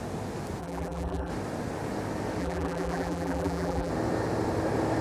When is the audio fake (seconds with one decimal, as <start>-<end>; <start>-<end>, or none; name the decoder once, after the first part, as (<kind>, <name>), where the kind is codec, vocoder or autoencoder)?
0.6-1.3 (vocoder, BigVGAN v2); 2.4-3.9